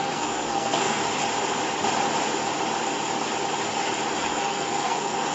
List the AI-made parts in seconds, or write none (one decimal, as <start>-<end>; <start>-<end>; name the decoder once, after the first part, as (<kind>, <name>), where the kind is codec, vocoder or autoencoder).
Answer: 0.0-1.0 (codec, SNAC); 4.2-5.3